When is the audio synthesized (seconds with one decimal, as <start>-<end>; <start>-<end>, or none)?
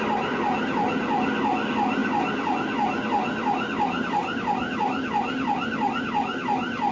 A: 2.0-2.5